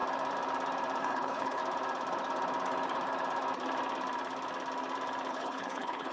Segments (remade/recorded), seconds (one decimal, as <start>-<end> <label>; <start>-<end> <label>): 0.0-1.0 recorded; 1.0-1.6 remade; 1.6-5.3 recorded; 5.3-6.1 remade